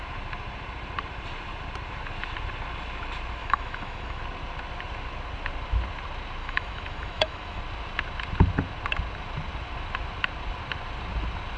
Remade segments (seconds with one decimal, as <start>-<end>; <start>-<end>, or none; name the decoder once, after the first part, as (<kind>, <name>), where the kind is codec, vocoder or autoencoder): 3.4-4.2 (autoencoder, DAC-VAE); 6.4-7.6